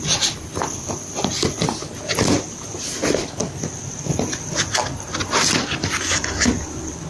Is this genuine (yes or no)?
yes